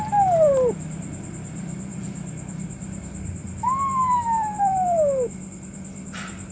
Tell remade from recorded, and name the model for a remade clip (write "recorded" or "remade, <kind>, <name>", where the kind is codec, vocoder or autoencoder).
remade, vocoder, BigVGAN v2